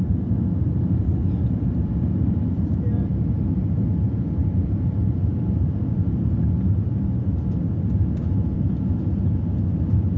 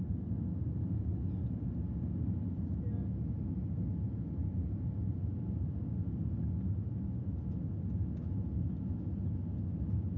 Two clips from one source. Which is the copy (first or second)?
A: first